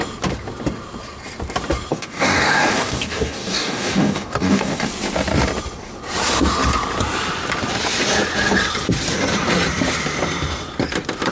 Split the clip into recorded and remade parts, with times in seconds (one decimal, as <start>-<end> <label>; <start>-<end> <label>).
0.0-1.9 recorded; 1.9-4.9 remade; 4.9-11.3 recorded